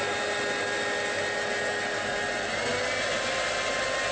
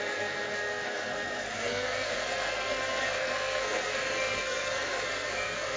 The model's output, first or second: second